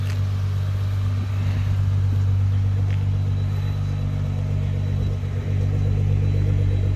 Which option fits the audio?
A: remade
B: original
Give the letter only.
B